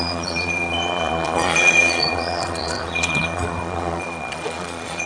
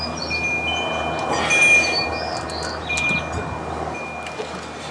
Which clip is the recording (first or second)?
second